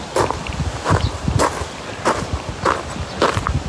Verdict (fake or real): real